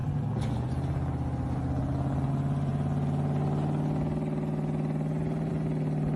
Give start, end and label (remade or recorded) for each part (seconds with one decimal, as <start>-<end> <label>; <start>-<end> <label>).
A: 0.0-6.2 recorded